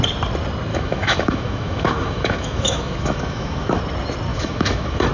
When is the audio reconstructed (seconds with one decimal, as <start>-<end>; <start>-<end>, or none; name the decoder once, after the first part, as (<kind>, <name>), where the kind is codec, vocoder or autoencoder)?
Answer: 0.7-3.8 (autoencoder, DAC-VAE); 4.3-5.1